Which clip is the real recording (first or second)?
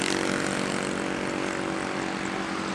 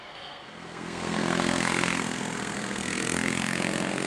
first